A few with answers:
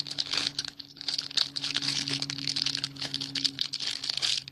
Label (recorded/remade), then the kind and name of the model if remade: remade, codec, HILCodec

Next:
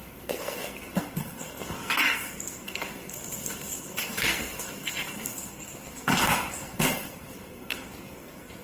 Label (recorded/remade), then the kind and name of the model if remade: remade, codec, SNAC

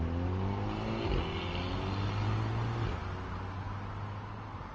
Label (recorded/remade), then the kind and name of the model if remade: recorded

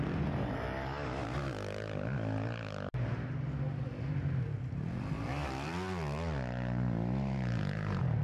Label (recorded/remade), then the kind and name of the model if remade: recorded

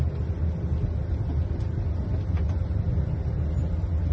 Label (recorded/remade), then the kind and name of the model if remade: recorded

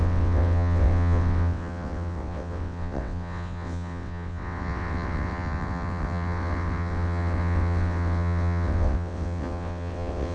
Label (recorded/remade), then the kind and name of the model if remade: remade, vocoder, WaveNeXt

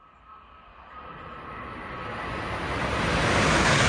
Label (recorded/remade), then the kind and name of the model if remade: recorded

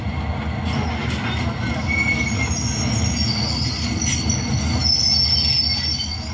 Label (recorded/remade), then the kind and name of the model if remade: recorded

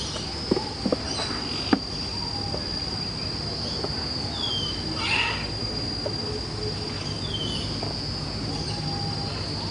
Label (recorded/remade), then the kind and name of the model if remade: recorded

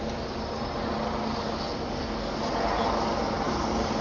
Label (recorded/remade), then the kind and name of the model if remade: recorded